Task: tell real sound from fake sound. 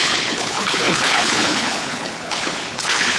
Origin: fake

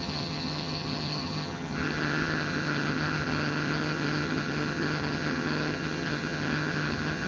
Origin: fake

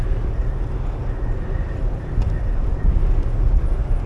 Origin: real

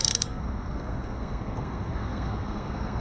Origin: fake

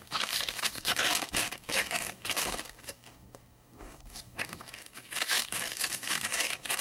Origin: fake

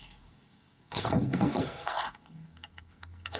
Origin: fake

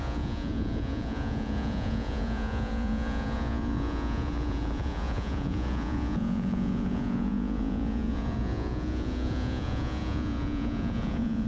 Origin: fake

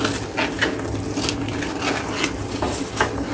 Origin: real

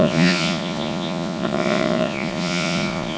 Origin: fake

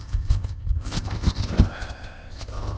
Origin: fake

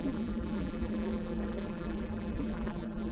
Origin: fake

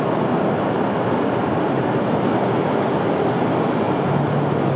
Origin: real